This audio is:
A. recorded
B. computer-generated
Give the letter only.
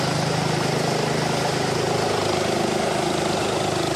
A